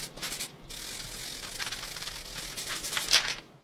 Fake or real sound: real